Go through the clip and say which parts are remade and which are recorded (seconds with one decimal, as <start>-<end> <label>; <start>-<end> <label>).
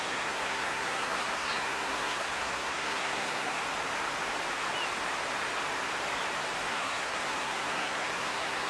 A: 0.0-3.6 remade; 3.6-6.7 recorded; 6.7-8.7 remade